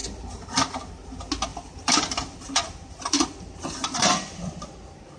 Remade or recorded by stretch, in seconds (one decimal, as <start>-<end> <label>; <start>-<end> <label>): 0.0-1.5 recorded; 1.5-4.6 remade; 4.6-5.2 recorded